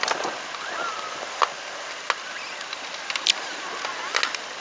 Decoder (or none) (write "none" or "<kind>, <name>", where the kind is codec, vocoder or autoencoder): none